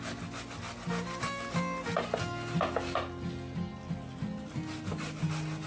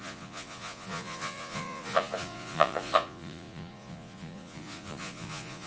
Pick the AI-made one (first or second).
second